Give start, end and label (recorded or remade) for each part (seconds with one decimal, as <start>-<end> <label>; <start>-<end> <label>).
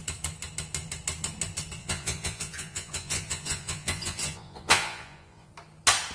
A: 0.0-1.8 recorded; 1.8-5.5 remade; 5.5-6.1 recorded